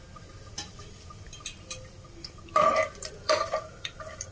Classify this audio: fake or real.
fake